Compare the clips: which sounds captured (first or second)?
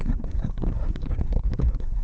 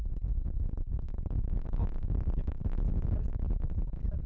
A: second